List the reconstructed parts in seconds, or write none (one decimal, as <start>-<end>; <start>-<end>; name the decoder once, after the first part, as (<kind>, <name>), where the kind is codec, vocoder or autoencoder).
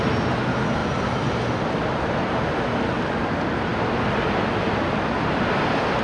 none